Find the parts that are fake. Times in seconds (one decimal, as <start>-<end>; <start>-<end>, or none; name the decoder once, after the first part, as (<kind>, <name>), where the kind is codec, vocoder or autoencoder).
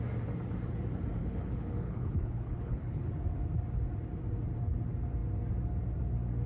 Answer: 1.2-3.1 (codec, HILCodec)